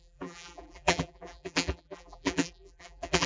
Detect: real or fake fake